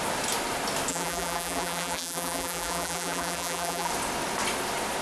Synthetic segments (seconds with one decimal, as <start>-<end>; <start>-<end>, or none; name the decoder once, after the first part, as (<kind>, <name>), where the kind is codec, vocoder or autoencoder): 0.9-3.9 (vocoder, BigVGAN v2)

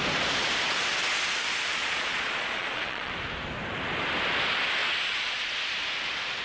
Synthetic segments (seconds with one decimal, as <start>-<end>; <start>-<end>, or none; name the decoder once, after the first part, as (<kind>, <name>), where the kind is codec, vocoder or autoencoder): 1.8-3.1 (vocoder, Vocos); 4.8-5.6

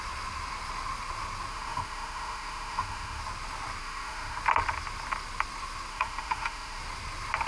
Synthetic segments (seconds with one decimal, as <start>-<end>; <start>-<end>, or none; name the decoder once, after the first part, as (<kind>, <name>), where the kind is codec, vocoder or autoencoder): 1.5-3.2 (autoencoder, DAC-VAE); 3.8-4.4; 5.9-6.8